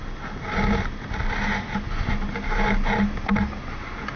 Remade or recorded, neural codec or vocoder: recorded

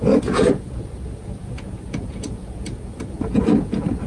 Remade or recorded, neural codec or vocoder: remade, vocoder, Vocos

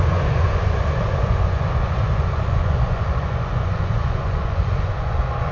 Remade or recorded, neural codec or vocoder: remade, vocoder, Vocos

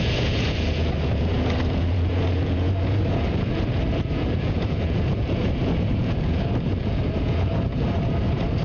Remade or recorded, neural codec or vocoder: remade, vocoder, Vocos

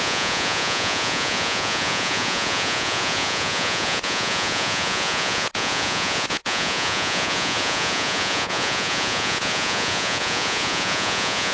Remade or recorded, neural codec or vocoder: remade, vocoder, Vocos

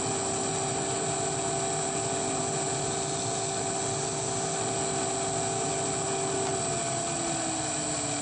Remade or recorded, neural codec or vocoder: recorded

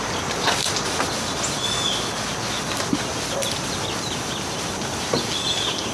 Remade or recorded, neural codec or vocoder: recorded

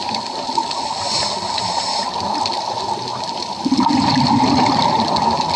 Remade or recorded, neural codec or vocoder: recorded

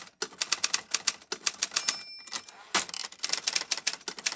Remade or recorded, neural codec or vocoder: recorded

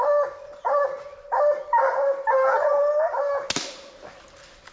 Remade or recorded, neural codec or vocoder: recorded